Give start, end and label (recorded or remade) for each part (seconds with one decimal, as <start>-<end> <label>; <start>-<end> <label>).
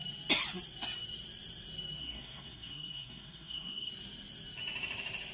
0.0-2.0 recorded; 2.0-3.9 remade; 3.9-5.3 recorded